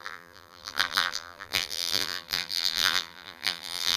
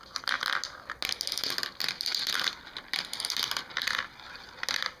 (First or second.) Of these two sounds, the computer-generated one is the first